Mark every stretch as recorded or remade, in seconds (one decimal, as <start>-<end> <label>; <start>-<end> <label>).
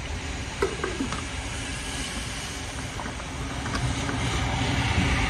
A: 0.0-1.7 remade; 1.7-5.3 recorded